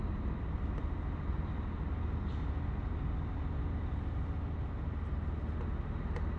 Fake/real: real